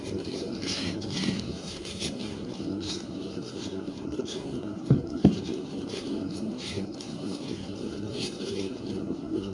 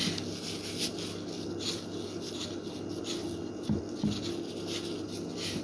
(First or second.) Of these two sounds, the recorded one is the second